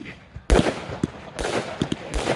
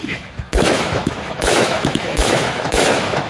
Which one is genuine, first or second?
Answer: first